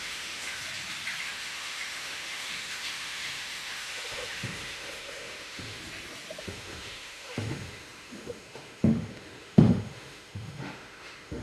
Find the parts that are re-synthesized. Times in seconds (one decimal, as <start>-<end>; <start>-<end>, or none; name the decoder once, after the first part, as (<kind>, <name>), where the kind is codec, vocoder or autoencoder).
0.0-0.6 (autoencoder, DAC-VAE); 1.2-5.8; 6.4-11.4